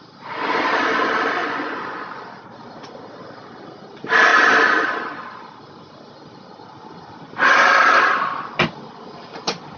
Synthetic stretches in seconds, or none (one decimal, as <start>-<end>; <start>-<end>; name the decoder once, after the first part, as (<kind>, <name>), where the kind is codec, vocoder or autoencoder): 1.4-2.2 (vocoder, Vocos)